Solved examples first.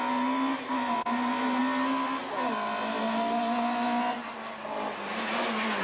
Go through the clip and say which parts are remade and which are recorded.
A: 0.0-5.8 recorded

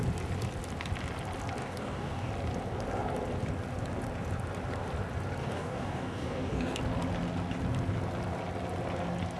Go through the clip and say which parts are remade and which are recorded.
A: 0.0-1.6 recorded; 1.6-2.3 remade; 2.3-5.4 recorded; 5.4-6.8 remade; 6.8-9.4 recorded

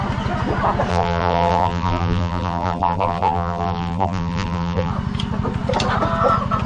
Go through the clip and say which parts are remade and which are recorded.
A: 0.0-0.9 recorded; 0.9-4.9 remade; 4.9-6.7 recorded

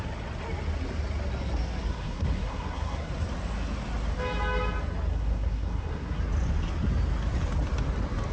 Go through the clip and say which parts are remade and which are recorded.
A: 0.0-1.9 recorded; 1.9-3.1 remade; 3.1-5.1 recorded; 5.1-6.2 remade; 6.2-8.3 recorded